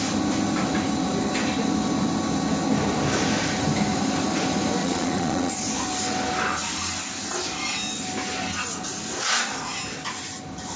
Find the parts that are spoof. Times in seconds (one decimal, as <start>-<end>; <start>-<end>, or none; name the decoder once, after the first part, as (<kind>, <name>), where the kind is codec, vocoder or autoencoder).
4.8-5.5 (vocoder, Vocos)